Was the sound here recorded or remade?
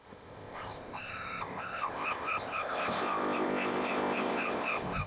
remade